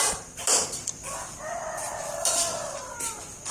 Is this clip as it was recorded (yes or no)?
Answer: yes